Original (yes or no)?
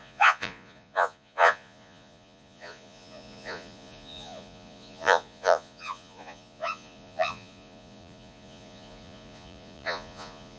no